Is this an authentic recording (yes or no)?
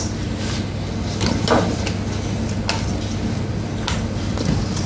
yes